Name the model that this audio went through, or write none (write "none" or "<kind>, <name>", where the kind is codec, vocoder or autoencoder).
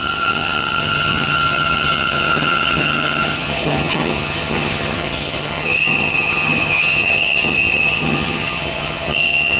vocoder, HiFi-GAN